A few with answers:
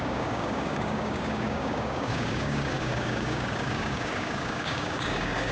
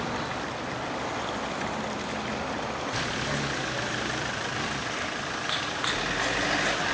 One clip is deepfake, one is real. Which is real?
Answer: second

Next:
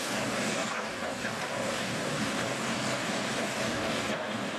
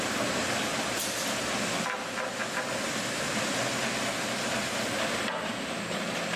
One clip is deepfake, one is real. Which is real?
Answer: second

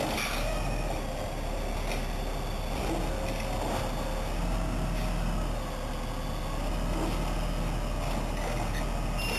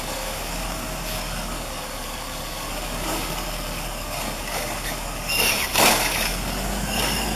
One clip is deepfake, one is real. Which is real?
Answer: first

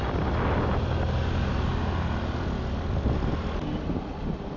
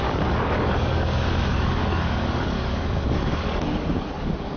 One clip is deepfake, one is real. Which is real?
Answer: first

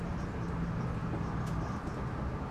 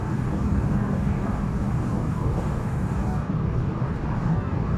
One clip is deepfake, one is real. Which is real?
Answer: first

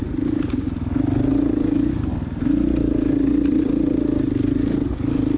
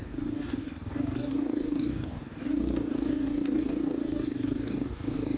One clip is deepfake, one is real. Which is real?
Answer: first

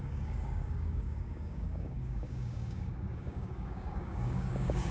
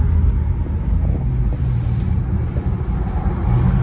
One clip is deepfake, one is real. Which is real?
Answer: second